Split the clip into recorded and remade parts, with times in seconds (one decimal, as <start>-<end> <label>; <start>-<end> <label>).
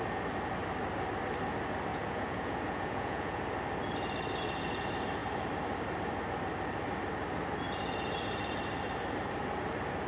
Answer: 0.0-1.9 recorded; 1.9-3.4 remade; 3.4-10.1 recorded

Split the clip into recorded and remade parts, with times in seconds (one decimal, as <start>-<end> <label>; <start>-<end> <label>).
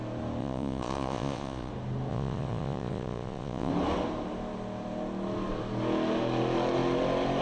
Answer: 0.0-0.4 recorded; 0.4-1.7 remade; 1.7-2.1 recorded; 2.1-3.7 remade; 3.7-7.4 recorded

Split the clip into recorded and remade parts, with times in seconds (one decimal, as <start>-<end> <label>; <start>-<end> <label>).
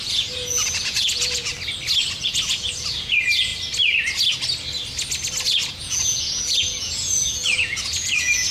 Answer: 0.0-1.5 remade; 1.5-2.2 recorded; 2.2-3.5 remade; 3.5-5.7 recorded; 5.7-8.5 remade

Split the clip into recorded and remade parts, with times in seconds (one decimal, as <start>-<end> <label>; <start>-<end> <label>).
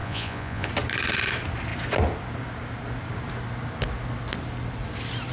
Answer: 0.0-0.7 remade; 0.7-5.3 recorded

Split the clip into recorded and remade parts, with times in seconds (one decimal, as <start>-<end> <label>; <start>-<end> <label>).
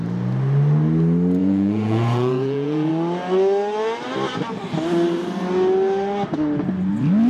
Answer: 0.0-1.4 recorded; 1.4-2.9 remade; 2.9-7.3 recorded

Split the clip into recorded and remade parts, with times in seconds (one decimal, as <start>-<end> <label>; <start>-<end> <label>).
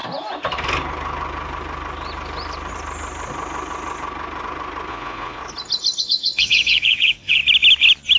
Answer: 0.0-4.9 recorded; 4.9-5.4 remade; 5.4-6.0 recorded; 6.0-7.4 remade; 7.4-8.2 recorded